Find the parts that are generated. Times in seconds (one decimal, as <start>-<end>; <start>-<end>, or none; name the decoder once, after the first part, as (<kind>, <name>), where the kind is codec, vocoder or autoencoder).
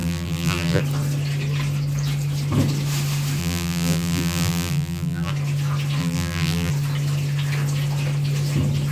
0.0-0.8 (vocoder, BigVGAN v2); 3.4-5.3; 6.0-6.7